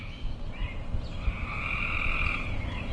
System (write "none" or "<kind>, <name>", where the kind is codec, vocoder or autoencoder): none